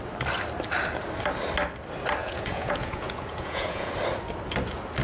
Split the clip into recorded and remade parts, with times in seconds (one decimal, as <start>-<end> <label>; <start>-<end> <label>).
0.0-2.2 recorded; 2.2-3.9 remade; 3.9-5.0 recorded